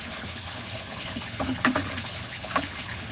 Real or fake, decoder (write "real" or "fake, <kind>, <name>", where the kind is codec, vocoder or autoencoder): fake, codec, HILCodec